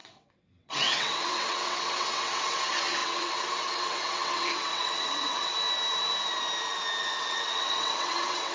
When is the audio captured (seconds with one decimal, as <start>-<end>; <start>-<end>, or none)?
5.5-7.0